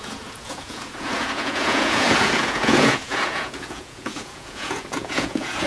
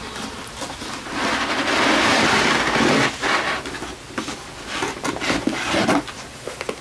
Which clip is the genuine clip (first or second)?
second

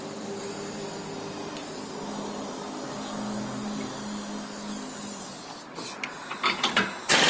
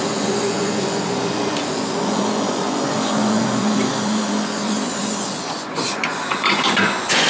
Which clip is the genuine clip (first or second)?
first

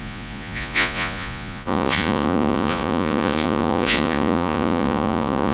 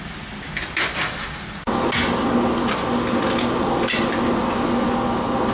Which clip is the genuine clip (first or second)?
second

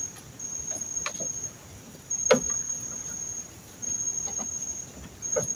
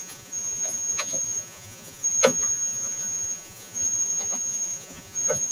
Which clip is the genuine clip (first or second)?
first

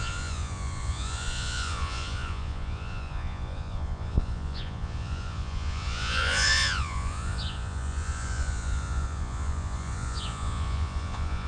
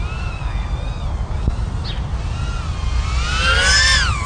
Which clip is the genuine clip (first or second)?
second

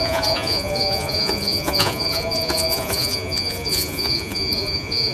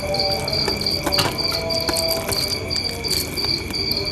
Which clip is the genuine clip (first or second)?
second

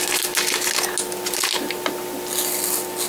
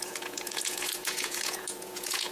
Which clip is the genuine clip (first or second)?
first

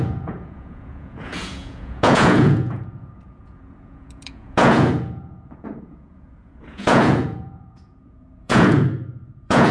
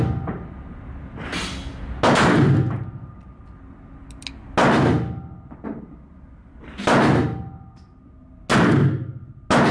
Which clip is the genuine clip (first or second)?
second